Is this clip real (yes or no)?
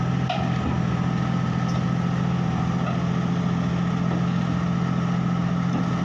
yes